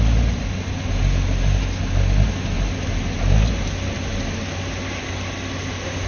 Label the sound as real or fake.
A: real